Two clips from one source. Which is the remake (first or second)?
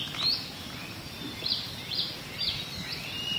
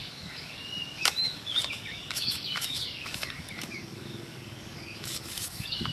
second